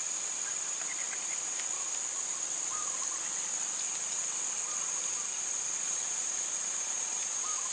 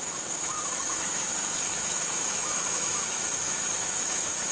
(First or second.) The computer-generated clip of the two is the second